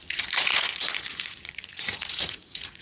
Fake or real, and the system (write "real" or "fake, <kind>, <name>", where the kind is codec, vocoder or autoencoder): fake, vocoder, Vocos